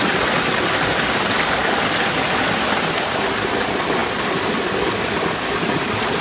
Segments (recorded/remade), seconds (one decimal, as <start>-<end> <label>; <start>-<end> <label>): 0.0-1.6 recorded; 1.6-2.2 remade; 2.2-4.0 recorded; 4.0-4.8 remade; 4.8-6.2 recorded

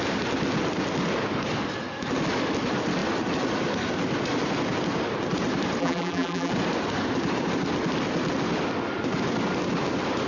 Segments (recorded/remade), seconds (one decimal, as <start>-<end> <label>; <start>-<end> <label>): 0.0-5.8 recorded; 5.8-6.5 remade; 6.5-10.3 recorded

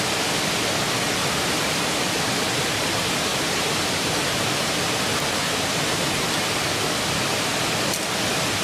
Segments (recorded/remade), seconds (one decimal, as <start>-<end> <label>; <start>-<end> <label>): 0.0-1.2 recorded; 1.2-2.2 remade; 2.2-3.3 recorded; 3.3-4.3 remade; 4.3-5.1 recorded; 5.1-6.4 remade; 6.4-8.6 recorded

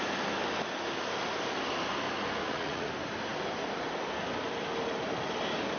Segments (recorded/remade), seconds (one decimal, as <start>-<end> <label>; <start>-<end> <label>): 0.0-2.4 recorded; 2.4-2.9 remade; 2.9-5.8 recorded

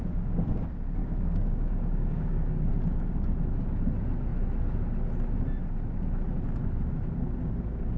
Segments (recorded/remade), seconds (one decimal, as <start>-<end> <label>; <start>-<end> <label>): 0.0-1.0 recorded; 1.0-2.7 remade; 2.7-8.0 recorded

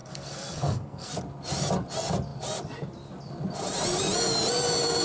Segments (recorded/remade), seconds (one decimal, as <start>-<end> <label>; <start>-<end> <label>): 0.0-1.1 remade; 1.1-5.0 recorded